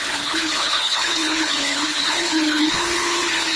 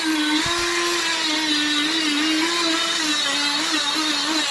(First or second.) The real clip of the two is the second